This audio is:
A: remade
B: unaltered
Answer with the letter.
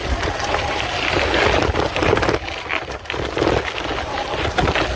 B